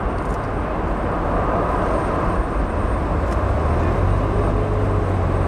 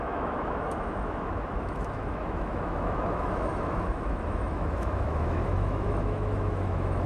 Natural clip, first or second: first